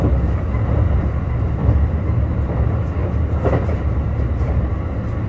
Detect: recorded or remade recorded